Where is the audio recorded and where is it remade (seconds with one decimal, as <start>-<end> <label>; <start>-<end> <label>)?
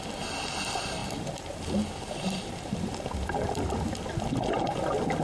0.0-1.0 recorded; 1.0-4.1 remade; 4.1-5.2 recorded